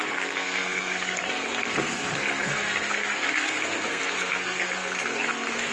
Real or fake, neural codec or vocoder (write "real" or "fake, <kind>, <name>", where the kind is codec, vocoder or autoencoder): fake, codec, SNAC